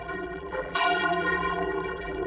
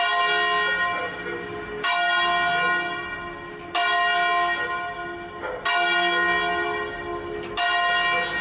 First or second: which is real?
second